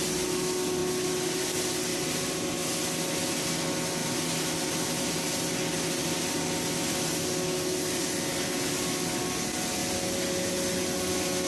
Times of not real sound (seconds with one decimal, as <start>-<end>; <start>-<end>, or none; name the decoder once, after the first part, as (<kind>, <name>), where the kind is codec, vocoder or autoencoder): 1.9-2.7 (vocoder, BigVGAN v2); 4.0-5.4